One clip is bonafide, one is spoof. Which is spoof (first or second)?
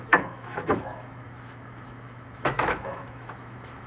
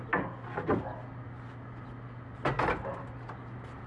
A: first